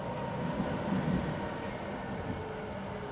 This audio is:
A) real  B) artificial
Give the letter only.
A